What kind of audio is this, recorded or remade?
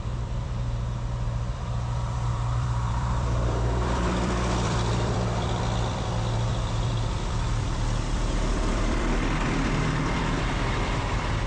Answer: remade